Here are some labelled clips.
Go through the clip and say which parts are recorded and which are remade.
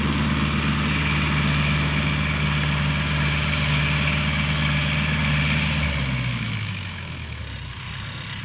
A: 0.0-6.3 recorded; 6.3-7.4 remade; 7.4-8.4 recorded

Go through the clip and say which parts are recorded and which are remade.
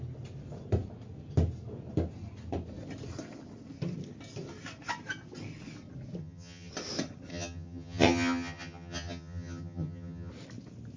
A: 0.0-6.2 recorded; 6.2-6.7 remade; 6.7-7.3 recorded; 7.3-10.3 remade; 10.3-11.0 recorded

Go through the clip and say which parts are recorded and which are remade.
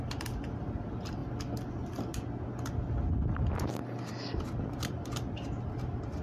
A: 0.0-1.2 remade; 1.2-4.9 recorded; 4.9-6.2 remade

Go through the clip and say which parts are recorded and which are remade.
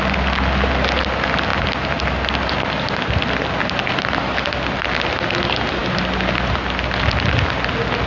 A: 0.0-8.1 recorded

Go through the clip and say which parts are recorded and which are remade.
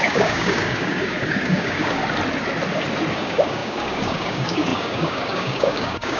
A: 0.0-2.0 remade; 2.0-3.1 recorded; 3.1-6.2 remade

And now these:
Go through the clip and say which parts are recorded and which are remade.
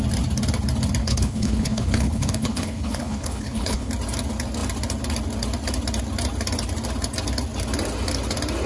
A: 0.0-1.0 recorded; 1.0-3.9 remade; 3.9-8.7 recorded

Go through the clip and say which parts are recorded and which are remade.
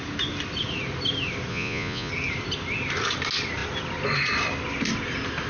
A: 0.0-1.5 recorded; 1.5-2.1 remade; 2.1-5.5 recorded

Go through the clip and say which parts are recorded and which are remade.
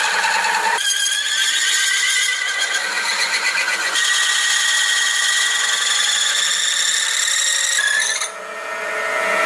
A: 0.0-1.4 recorded; 1.4-6.4 remade; 6.4-9.5 recorded